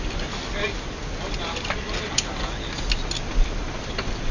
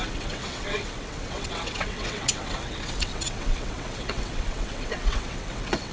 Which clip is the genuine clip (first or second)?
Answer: first